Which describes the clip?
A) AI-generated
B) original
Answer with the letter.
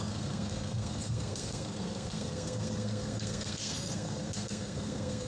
A